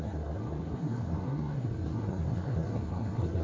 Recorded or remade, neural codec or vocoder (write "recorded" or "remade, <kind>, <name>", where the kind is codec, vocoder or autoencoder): remade, codec, SNAC